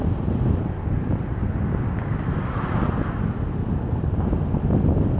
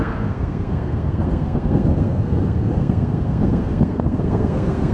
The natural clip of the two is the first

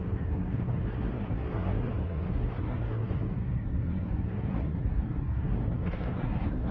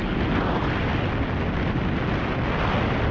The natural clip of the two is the second